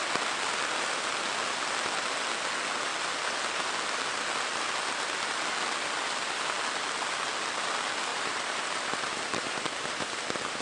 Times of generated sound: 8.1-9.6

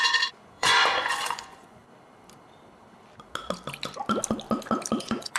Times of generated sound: 0.0-1.8; 5.0-5.4